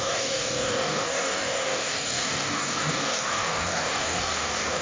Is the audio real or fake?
fake